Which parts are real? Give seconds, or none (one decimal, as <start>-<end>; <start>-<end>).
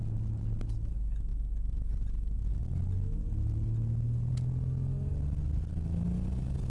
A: 0.0-6.7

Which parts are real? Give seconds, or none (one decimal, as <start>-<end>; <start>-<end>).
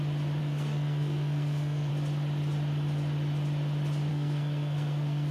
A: 0.0-0.4; 1.9-4.1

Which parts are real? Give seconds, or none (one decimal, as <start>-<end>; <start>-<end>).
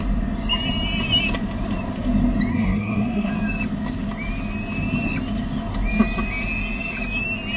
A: 0.0-2.5; 3.3-7.6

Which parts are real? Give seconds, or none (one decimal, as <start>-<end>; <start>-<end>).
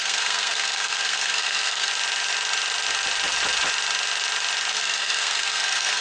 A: 1.9-4.7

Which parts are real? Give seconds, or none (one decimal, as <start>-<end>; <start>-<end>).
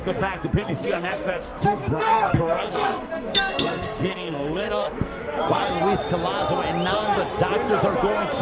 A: 5.6-8.4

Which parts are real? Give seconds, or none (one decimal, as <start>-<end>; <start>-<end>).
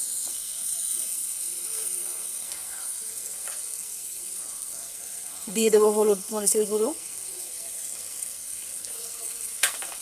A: none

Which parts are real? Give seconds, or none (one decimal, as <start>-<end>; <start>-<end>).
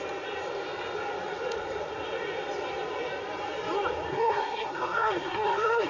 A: 0.0-4.1